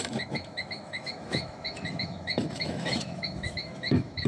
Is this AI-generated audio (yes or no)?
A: yes